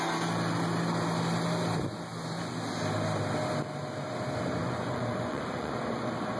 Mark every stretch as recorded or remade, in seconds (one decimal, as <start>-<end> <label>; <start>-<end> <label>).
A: 0.0-4.6 recorded; 4.6-5.7 remade; 5.7-6.4 recorded